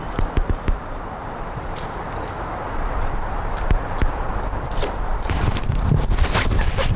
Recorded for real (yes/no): no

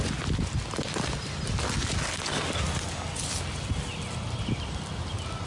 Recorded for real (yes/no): yes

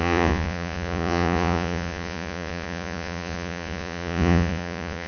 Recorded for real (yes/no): no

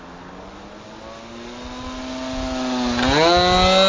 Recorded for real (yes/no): yes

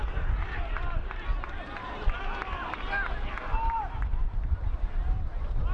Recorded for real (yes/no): no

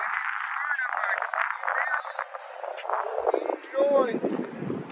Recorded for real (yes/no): yes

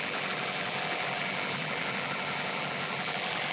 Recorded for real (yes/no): no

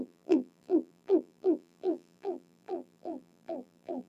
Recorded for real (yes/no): no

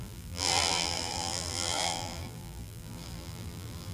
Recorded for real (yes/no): no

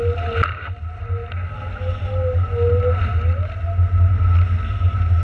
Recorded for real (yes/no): yes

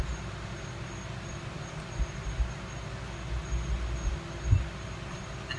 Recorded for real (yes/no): yes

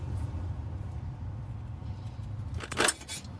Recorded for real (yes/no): yes